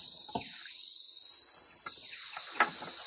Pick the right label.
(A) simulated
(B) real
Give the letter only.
B